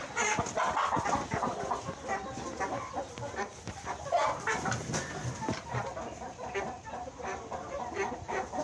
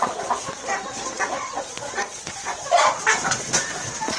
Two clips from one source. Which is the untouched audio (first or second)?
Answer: first